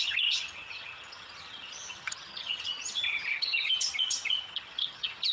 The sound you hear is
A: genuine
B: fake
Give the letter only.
B